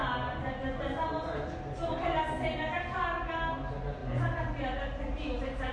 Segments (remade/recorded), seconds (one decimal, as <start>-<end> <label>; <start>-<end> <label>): 0.0-5.7 recorded